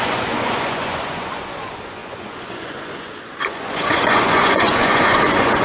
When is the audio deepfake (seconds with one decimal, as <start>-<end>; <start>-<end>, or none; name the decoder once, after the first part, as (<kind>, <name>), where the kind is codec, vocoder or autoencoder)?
0.0-5.6 (vocoder, Vocos)